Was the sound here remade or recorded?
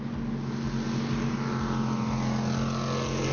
recorded